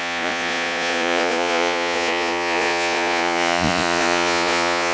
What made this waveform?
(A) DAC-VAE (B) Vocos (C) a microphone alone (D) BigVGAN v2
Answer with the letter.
B